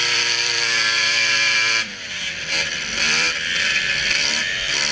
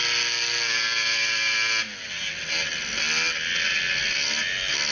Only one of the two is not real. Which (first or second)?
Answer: first